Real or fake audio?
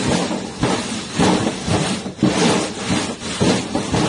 real